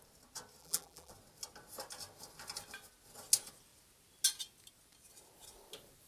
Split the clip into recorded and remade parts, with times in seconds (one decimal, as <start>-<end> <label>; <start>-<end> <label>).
0.0-0.6 recorded; 0.6-1.1 remade; 1.1-6.1 recorded